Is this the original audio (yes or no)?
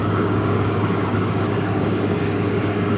no